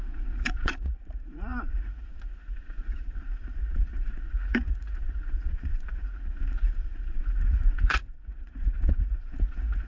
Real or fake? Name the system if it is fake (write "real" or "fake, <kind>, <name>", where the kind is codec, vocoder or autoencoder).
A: fake, vocoder, Vocos